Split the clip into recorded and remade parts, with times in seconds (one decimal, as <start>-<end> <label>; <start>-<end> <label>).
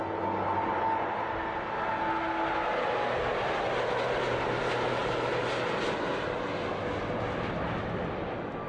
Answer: 0.0-8.7 recorded